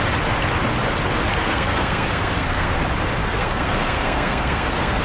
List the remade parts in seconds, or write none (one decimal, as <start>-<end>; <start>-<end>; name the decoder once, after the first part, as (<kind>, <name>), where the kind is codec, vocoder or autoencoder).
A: 1.4-2.8 (codec, SNAC); 3.2-5.0